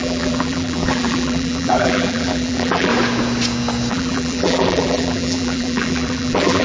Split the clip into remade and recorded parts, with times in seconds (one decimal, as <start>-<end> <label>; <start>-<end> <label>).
0.0-2.9 remade; 2.9-3.9 recorded; 3.9-6.6 remade